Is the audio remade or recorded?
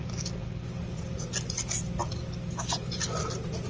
recorded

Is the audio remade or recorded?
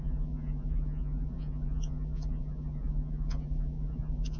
remade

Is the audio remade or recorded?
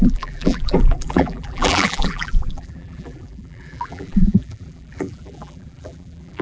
remade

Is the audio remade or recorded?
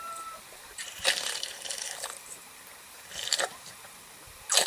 remade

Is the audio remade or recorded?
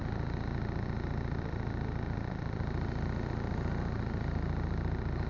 recorded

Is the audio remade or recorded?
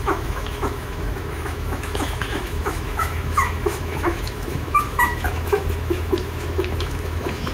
remade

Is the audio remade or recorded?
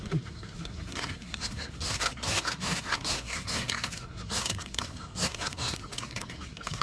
remade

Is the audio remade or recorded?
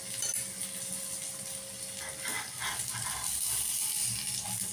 recorded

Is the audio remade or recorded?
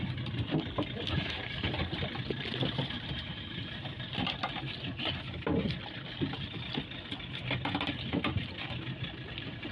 recorded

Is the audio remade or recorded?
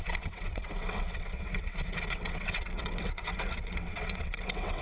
remade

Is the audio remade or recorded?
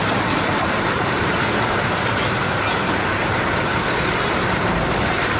remade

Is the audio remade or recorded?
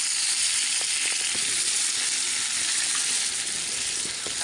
recorded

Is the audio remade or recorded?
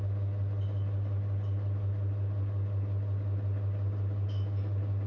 recorded